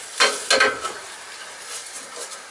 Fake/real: real